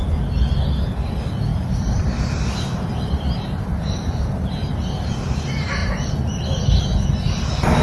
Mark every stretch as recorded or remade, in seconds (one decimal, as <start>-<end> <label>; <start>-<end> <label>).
0.0-1.5 recorded; 1.5-4.7 remade; 4.7-5.8 recorded; 5.8-6.6 remade; 6.6-7.8 recorded